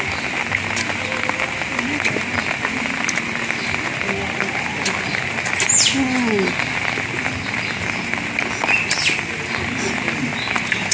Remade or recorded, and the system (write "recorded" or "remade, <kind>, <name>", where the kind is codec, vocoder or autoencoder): recorded